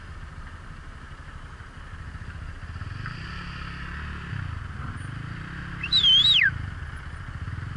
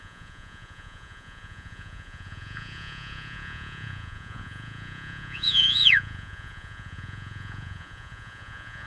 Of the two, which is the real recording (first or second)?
first